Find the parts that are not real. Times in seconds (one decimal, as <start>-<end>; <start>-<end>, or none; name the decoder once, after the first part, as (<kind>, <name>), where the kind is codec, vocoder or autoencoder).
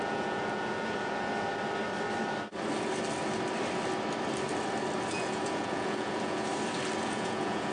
0.0-1.5 (vocoder, Vocos); 5.1-6.5; 7.0-7.7